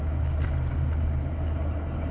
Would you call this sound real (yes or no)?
yes